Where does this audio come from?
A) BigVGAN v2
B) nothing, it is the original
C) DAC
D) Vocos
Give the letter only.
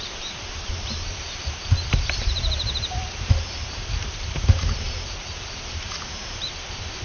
A